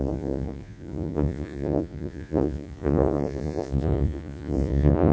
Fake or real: fake